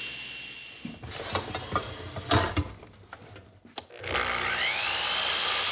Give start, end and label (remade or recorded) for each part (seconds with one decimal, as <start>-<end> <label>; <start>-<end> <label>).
0.0-5.7 recorded